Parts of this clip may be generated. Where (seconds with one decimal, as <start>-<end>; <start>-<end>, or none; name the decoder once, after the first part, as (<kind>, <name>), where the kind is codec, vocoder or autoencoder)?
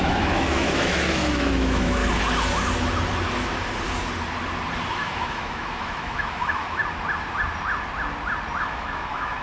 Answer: 0.0-2.0 (autoencoder, DAC-VAE); 4.9-6.8; 8.6-9.4